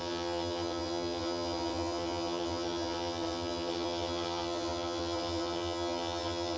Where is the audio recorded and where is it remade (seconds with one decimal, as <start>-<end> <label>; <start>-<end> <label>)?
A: 0.0-6.6 remade